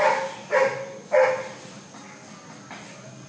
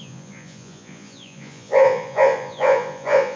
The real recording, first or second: first